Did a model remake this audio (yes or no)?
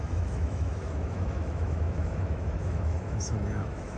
yes